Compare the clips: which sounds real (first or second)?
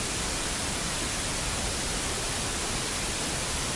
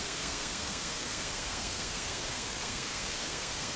first